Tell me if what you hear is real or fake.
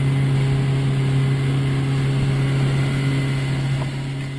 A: real